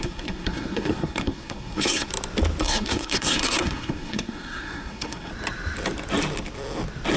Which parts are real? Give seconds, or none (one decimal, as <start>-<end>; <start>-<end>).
2.1-2.6; 5.3-7.2